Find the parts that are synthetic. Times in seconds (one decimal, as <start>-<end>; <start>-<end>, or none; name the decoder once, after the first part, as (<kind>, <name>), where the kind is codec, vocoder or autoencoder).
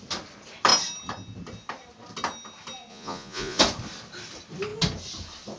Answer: 2.9-3.6 (vocoder, Vocos)